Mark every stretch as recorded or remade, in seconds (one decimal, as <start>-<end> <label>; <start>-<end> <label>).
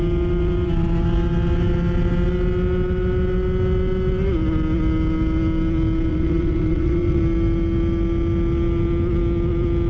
0.0-6.1 recorded; 6.1-7.2 remade; 7.2-9.9 recorded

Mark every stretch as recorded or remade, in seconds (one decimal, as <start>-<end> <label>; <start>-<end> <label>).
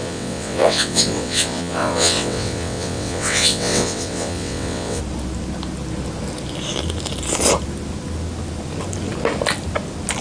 0.0-5.0 remade; 5.0-10.2 recorded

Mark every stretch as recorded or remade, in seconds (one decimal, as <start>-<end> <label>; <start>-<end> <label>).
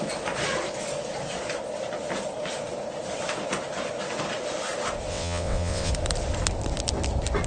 0.0-5.1 recorded; 5.1-5.9 remade; 5.9-7.5 recorded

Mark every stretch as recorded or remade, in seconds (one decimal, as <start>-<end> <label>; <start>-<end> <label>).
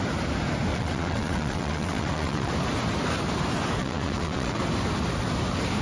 0.0-0.7 recorded; 0.7-2.5 remade; 2.5-3.8 recorded; 3.8-4.6 remade; 4.6-5.8 recorded